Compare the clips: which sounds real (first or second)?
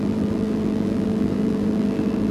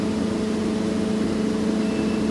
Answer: second